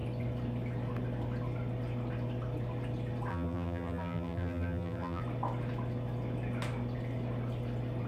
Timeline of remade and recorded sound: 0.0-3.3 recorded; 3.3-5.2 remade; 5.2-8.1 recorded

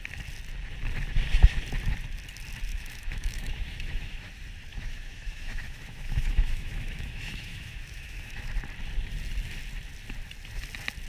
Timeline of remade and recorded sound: 0.0-2.7 recorded; 2.7-4.3 remade; 4.3-4.7 recorded; 4.7-8.5 remade; 8.5-11.1 recorded

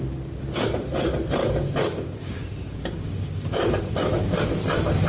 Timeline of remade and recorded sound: 0.0-1.4 recorded; 1.4-4.5 remade; 4.5-5.1 recorded

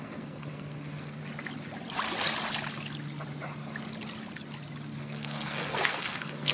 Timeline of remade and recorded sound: 0.0-1.2 remade; 1.2-5.0 recorded; 5.0-6.5 remade

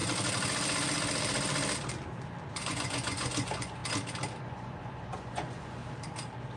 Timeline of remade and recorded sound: 0.0-2.5 recorded; 2.5-3.8 remade; 3.8-4.4 recorded; 4.4-5.8 remade; 5.8-6.6 recorded

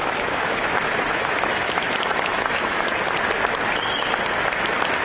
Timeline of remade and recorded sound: 0.0-3.0 remade; 3.0-5.0 recorded